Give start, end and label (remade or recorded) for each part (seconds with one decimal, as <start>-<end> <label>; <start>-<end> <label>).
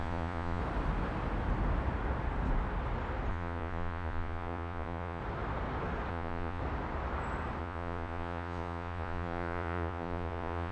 0.0-0.6 remade; 0.6-3.3 recorded; 3.3-5.2 remade; 5.2-6.1 recorded; 6.1-6.6 remade; 6.6-7.6 recorded; 7.6-10.7 remade